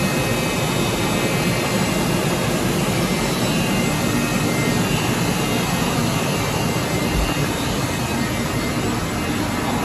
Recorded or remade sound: recorded